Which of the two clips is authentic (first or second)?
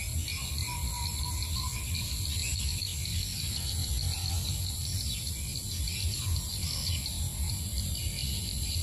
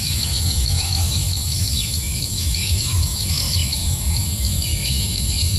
first